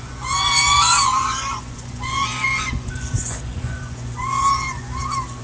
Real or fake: fake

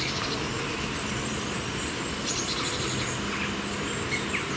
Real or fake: real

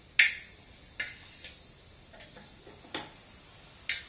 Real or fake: real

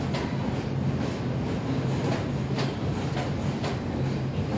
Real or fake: real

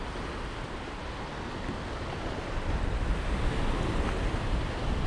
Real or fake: fake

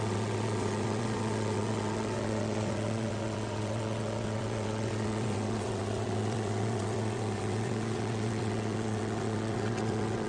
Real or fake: fake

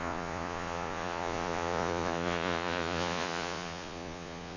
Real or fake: fake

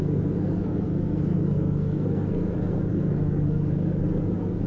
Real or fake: fake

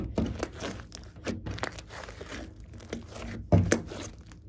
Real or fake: real